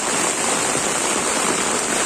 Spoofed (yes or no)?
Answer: no